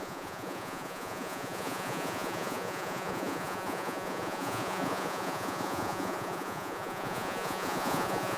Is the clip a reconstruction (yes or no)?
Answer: yes